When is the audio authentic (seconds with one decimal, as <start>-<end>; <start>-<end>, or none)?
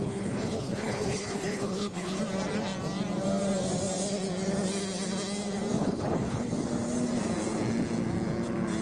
2.2-5.8; 6.5-8.8